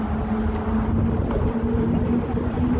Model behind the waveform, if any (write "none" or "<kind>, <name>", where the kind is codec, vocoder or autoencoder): none